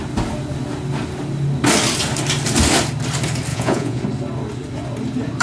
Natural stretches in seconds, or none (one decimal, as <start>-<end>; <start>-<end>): 0.0-3.5; 4.0-5.4